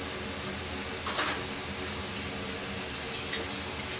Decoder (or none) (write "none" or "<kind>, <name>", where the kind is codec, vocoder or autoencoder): none